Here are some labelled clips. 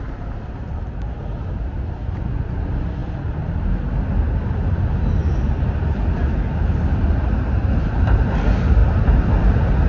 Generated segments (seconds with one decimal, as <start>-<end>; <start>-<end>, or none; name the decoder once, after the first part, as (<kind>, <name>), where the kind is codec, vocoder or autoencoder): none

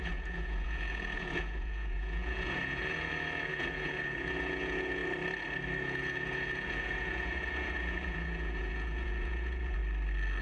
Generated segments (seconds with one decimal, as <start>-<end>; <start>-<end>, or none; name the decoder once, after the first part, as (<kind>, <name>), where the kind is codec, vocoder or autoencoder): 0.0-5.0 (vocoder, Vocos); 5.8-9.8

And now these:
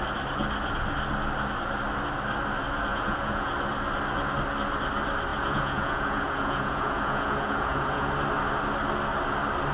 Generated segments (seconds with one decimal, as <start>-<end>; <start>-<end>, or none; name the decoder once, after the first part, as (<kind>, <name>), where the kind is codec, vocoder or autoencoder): 2.9-3.5 (vocoder, Vocos); 5.3-8.1